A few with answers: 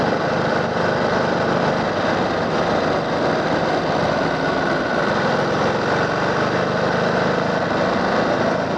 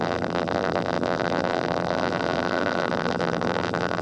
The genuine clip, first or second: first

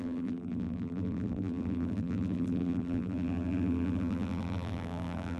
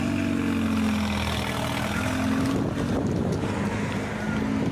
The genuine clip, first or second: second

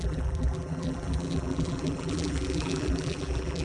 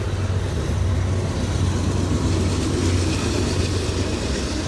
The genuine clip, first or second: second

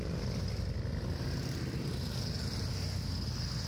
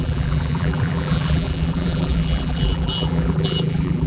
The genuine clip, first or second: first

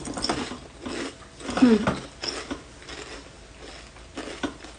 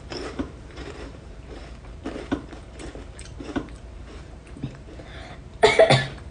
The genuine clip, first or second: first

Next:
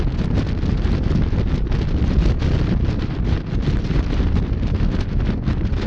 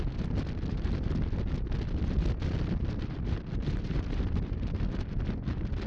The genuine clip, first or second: first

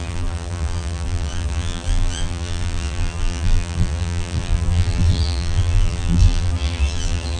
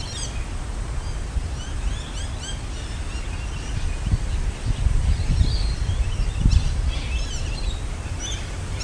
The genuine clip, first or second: second